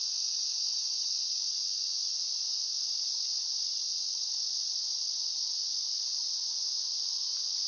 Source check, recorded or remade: recorded